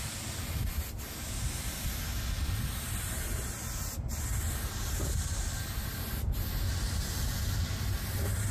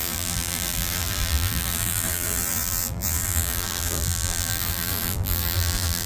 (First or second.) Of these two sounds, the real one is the first